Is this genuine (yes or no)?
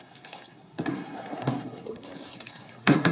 no